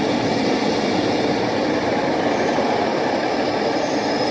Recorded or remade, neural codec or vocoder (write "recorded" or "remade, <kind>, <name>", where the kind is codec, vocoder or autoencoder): remade, vocoder, BigVGAN v2